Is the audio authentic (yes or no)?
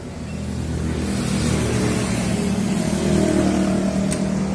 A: yes